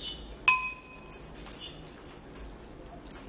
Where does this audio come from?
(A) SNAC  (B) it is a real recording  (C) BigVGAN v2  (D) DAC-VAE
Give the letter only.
B